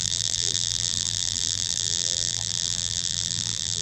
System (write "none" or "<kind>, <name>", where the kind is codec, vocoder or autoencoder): vocoder, BigVGAN v2